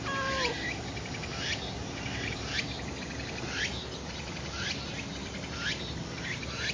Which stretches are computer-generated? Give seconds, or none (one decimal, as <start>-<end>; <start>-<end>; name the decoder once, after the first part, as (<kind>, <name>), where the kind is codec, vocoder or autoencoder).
1.8-2.5 (vocoder, BigVGAN v2)